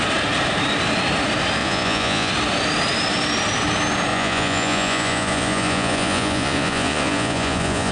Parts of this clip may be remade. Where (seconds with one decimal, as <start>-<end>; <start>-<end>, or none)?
1.6-2.3; 4.1-7.9